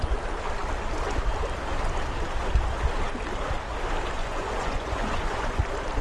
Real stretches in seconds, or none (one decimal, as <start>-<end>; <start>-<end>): 0.0-4.2; 5.6-6.0